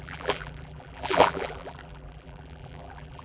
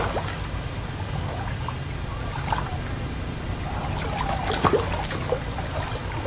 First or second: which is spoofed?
first